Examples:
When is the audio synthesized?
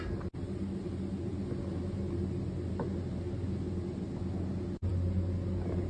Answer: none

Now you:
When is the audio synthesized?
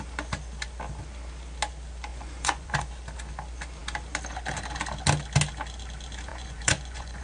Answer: 2.1-2.9 (vocoder, Vocos); 6.3-7.2